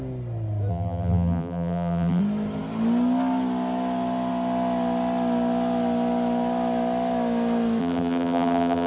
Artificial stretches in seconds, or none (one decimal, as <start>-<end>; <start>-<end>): 0.7-2.2; 7.8-8.9